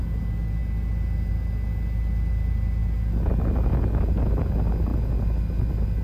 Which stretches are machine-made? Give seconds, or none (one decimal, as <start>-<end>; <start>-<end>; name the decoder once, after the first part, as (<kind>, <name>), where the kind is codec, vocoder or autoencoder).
none